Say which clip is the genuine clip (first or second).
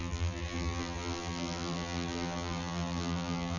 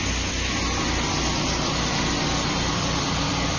second